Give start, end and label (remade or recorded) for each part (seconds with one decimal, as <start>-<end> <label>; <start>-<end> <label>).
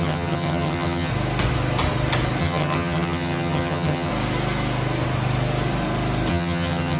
0.0-1.1 remade; 1.1-2.4 recorded; 2.4-4.1 remade; 4.1-6.3 recorded; 6.3-7.0 remade